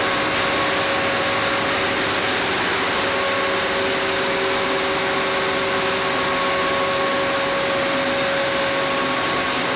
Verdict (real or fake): real